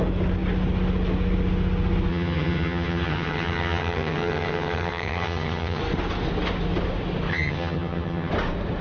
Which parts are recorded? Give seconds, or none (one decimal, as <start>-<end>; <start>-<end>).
0.0-2.1; 5.8-7.3; 8.3-8.8